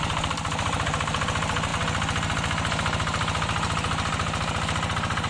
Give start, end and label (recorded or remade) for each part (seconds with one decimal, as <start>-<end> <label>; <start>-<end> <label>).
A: 0.0-1.7 remade; 1.7-5.3 recorded